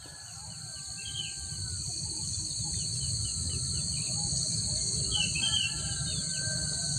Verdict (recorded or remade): remade